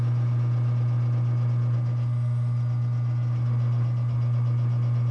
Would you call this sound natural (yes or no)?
yes